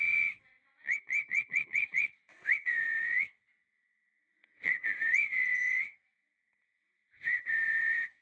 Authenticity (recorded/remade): remade